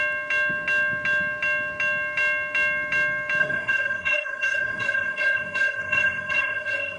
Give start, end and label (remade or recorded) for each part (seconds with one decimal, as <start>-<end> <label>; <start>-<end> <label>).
0.0-3.4 recorded; 3.4-7.0 remade